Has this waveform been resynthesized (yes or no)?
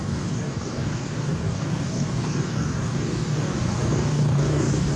yes